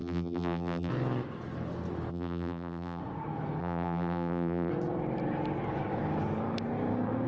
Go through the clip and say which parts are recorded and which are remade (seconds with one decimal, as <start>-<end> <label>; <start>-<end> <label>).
0.0-0.9 remade; 0.9-2.1 recorded; 2.1-3.0 remade; 3.0-3.6 recorded; 3.6-4.7 remade; 4.7-7.3 recorded